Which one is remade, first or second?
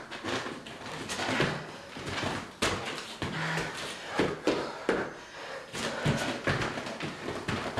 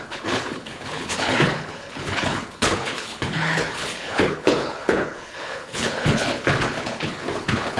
second